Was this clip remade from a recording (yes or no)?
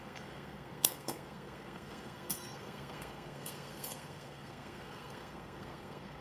yes